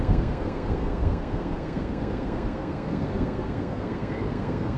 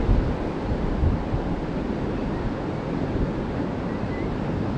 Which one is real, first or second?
second